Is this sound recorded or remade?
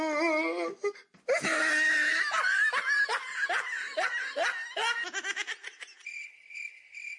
recorded